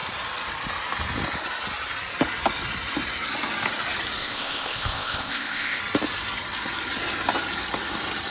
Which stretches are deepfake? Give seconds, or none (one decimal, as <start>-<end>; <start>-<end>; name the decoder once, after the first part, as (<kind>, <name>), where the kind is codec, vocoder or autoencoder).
4.2-5.8 (codec, ZipCodec)